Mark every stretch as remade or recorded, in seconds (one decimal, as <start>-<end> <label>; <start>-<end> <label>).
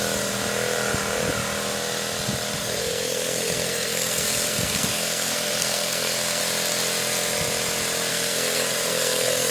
0.0-2.6 recorded; 2.6-6.4 remade; 6.4-8.1 recorded; 8.1-9.5 remade